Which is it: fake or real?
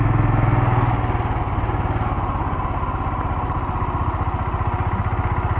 real